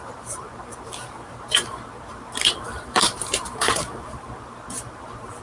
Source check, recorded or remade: remade